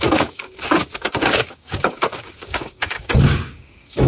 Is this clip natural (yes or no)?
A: no